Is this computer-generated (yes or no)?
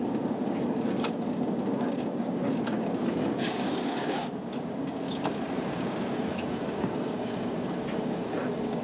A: yes